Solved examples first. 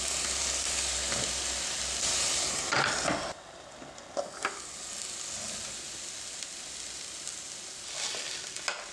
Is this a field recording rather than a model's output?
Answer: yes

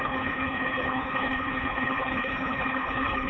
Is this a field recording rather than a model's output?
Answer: no